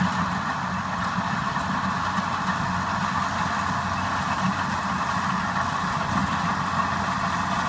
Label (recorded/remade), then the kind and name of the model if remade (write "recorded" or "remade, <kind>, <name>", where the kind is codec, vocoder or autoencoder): recorded